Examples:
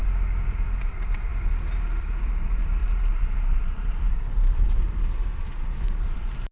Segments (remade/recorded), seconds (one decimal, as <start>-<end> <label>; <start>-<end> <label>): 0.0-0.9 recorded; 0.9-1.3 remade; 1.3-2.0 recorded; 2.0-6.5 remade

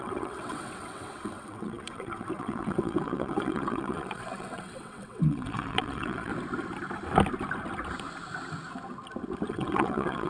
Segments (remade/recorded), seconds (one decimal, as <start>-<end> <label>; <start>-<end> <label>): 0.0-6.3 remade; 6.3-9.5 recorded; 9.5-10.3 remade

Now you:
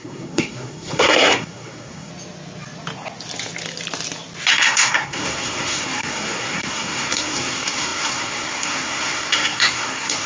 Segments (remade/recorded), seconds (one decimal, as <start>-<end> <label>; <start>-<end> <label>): 0.0-2.1 remade; 2.1-4.5 recorded; 4.5-10.3 remade

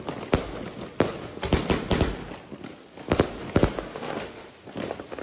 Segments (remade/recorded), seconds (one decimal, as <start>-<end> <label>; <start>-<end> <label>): 0.0-3.9 recorded; 3.9-4.5 remade; 4.5-5.2 recorded

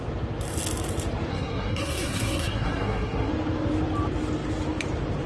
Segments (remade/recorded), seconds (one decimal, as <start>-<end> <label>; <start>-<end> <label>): 0.0-1.3 recorded; 1.3-3.3 remade; 3.3-5.3 recorded